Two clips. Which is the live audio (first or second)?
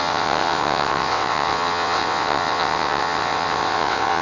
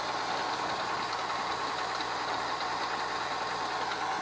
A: second